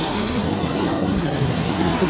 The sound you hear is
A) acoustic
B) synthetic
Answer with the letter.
B